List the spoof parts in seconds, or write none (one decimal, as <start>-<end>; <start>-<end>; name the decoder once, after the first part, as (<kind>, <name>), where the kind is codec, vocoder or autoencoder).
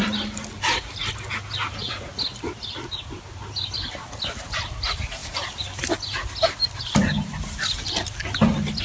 none